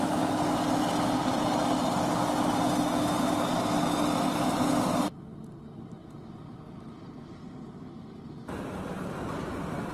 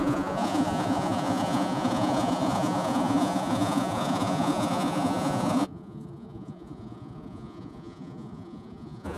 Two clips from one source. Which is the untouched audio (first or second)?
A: first